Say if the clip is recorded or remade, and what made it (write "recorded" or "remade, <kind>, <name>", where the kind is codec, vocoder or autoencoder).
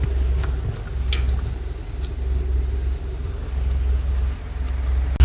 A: recorded